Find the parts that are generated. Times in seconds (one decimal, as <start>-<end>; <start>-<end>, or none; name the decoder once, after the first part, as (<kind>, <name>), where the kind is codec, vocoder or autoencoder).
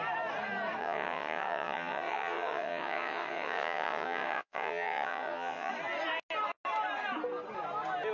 0.8-5.7 (vocoder, WaveNeXt)